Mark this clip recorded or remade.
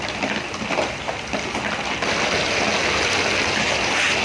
recorded